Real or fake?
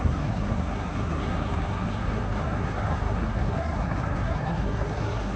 fake